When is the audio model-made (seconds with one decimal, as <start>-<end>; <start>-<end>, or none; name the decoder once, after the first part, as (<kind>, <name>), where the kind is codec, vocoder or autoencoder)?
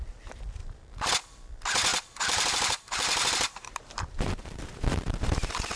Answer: 0.6-1.1 (vocoder, BigVGAN v2); 1.9-5.8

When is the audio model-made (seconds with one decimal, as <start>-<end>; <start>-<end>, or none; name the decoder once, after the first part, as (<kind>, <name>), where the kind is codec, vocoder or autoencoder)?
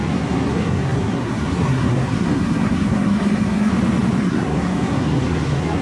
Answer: 0.0-3.7 (codec, SNAC); 4.2-5.8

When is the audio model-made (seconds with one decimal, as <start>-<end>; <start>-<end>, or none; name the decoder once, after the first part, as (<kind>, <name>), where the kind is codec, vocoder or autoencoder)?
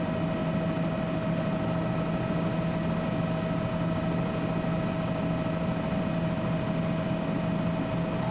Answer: none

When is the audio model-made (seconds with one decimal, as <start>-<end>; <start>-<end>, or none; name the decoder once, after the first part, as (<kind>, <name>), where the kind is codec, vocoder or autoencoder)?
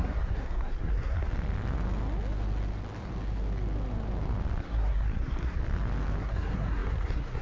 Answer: 0.0-1.3 (codec, SNAC); 4.6-5.6; 6.2-7.4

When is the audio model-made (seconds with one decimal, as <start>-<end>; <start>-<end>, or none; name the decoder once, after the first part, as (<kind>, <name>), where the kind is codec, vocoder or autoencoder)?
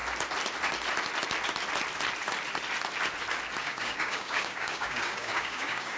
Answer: 3.6-6.0 (codec, DAC)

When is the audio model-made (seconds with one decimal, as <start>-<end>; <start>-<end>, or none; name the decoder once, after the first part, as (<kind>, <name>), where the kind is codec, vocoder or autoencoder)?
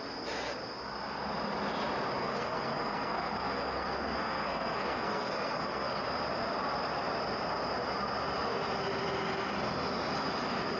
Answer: 2.2-6.0 (codec, SNAC)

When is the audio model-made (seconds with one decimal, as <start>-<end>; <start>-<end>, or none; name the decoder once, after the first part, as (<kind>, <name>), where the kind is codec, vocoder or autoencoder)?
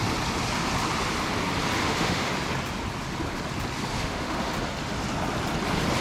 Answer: 1.8-2.3 (autoencoder, DAC-VAE); 3.9-4.5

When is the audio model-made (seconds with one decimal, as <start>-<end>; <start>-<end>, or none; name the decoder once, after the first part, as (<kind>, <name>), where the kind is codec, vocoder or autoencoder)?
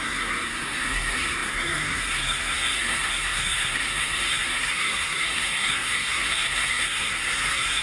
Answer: 0.0-7.8 (codec, SNAC)